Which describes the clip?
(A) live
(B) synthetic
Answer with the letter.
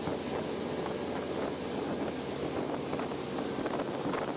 A